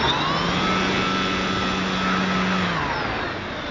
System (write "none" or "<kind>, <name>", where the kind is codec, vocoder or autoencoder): none